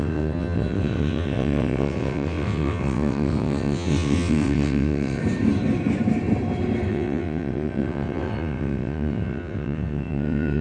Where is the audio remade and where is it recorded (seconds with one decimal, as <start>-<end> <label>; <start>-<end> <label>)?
0.0-5.2 remade; 5.2-6.9 recorded; 6.9-10.6 remade